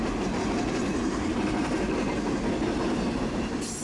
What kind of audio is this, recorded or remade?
recorded